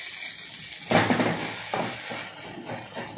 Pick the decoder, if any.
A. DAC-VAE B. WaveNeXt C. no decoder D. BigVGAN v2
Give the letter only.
C